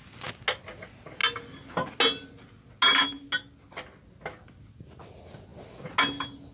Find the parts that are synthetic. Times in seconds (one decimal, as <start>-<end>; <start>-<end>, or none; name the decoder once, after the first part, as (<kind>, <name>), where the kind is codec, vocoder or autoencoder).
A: none